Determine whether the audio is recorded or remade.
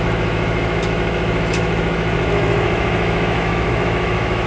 remade